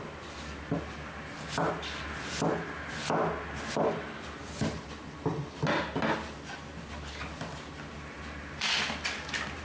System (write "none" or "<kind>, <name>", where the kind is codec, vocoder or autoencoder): none